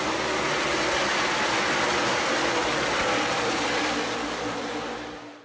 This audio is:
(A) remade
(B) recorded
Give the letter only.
B